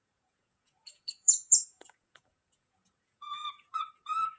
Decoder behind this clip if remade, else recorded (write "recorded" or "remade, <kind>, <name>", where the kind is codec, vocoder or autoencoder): remade, vocoder, Vocos